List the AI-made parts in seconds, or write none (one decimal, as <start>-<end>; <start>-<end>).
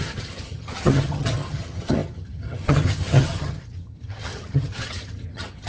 0.0-5.7